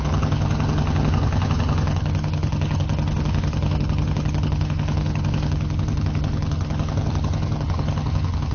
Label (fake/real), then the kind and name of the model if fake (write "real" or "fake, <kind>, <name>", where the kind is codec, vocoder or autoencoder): fake, vocoder, HiFi-GAN